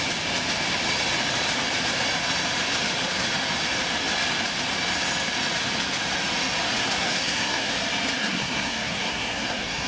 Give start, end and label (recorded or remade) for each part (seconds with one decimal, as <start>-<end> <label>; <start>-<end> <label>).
0.0-6.8 recorded; 6.8-7.7 remade; 7.7-8.2 recorded; 8.2-9.9 remade